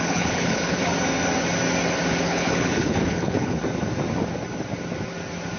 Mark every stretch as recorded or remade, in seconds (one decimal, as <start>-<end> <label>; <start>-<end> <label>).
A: 0.0-0.8 remade; 0.8-2.2 recorded; 2.2-3.6 remade; 3.6-5.6 recorded